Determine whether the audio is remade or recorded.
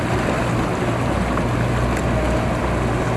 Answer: recorded